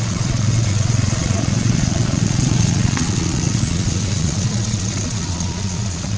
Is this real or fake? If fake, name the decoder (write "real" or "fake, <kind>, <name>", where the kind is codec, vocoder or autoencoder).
fake, vocoder, Vocos